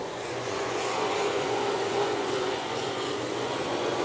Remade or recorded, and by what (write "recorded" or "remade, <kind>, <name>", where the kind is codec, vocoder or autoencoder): remade, vocoder, Vocos